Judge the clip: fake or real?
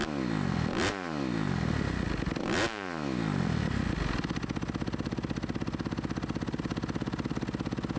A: real